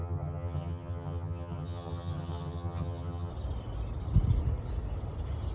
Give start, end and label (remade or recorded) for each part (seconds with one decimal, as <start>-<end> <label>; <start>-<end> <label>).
0.0-3.3 remade; 3.3-5.5 recorded